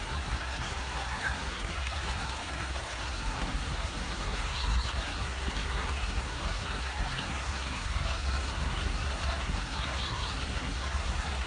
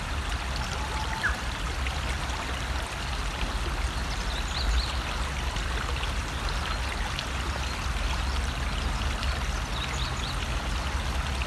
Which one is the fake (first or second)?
first